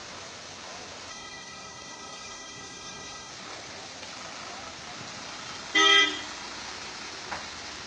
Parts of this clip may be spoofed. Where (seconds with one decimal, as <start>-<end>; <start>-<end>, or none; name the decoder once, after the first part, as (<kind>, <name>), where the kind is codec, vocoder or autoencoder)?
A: 1.1-3.3 (codec, SNAC)